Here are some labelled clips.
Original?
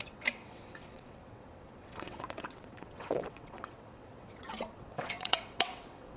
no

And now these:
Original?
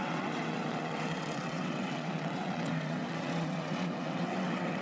no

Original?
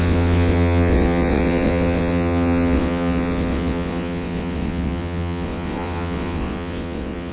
no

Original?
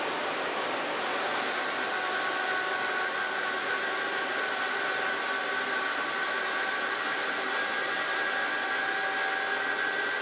yes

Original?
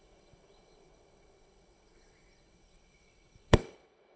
no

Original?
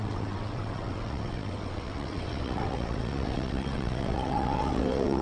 no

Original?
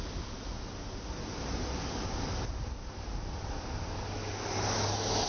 yes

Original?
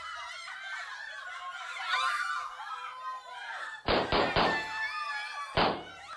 yes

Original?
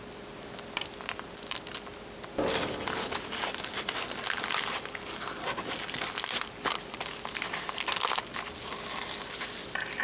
yes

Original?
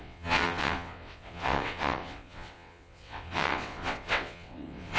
no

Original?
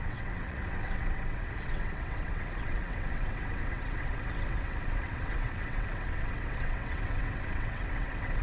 no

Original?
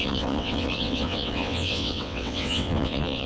no